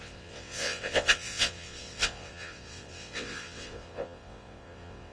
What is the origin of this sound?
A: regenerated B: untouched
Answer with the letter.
A